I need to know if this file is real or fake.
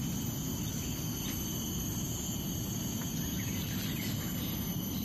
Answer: real